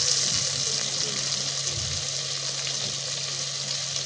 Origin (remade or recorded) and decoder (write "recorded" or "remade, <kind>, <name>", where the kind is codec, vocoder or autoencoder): recorded